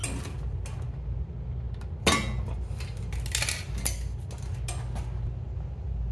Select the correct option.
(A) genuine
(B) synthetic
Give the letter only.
A